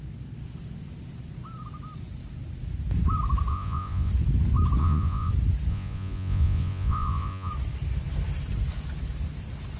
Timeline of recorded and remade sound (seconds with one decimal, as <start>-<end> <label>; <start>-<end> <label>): 0.0-3.5 recorded; 3.5-4.1 remade; 4.1-4.8 recorded; 4.8-5.3 remade; 5.3-5.7 recorded; 5.7-7.5 remade; 7.5-9.8 recorded